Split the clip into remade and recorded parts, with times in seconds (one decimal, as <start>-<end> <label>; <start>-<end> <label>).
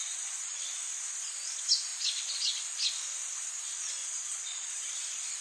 0.0-0.6 remade; 0.6-4.0 recorded; 4.0-4.9 remade; 4.9-5.4 recorded